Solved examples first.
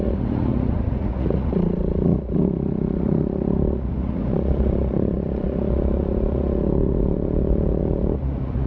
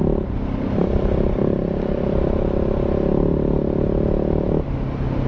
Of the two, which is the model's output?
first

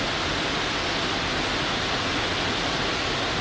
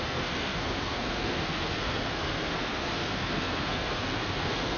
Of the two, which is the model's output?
second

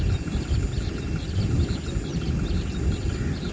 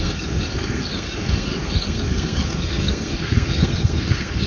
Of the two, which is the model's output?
second